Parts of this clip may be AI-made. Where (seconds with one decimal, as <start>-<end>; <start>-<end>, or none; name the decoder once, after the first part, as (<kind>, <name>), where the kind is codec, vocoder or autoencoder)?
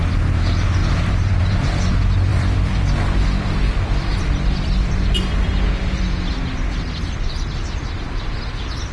0.8-1.9 (vocoder, BigVGAN v2); 2.3-6.3